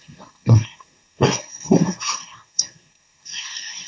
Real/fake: fake